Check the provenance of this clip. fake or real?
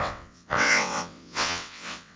fake